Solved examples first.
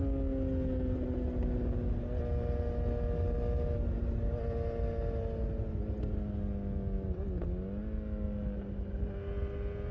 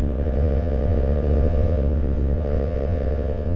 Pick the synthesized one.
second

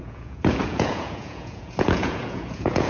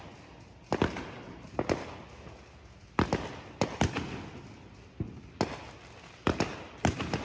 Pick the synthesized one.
first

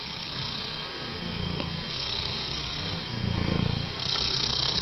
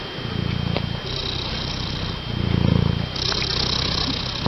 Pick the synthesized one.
first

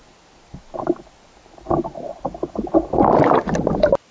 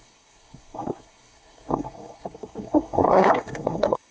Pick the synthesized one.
second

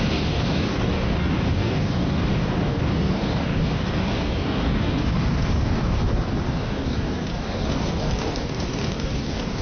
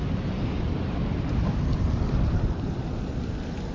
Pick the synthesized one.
first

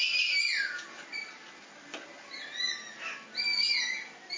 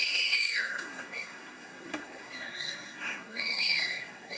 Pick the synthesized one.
second